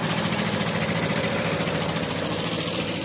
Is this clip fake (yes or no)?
yes